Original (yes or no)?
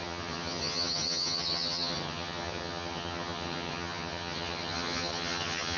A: no